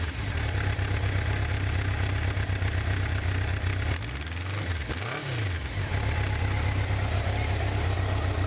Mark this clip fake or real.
real